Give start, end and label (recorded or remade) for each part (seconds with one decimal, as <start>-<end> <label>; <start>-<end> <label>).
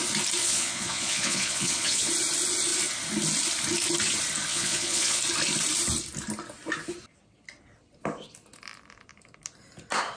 0.0-0.4 recorded; 0.4-2.1 remade; 2.1-4.5 recorded; 4.5-5.2 remade; 5.2-10.2 recorded